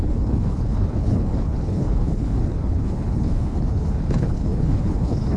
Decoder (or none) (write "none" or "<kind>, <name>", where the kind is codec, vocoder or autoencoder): codec, HILCodec